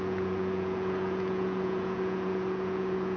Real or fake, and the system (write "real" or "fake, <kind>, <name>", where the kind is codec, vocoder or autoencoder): fake, vocoder, Vocos